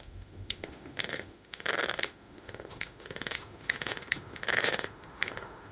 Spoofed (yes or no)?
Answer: yes